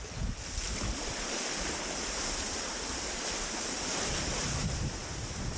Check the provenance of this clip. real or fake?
real